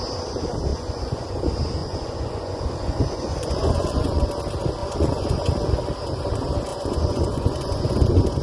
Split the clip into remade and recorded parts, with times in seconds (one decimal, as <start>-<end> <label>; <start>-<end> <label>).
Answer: 0.0-0.7 recorded; 0.7-1.4 remade; 1.4-1.8 recorded; 1.8-4.3 remade; 4.3-4.8 recorded; 4.8-5.5 remade; 5.5-6.7 recorded; 6.7-8.4 remade